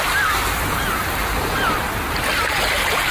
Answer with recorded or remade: recorded